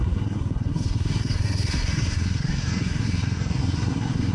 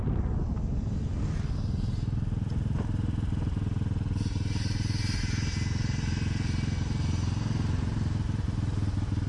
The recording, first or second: second